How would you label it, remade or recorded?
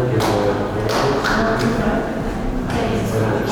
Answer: recorded